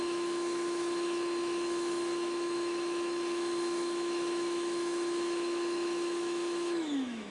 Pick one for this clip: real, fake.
fake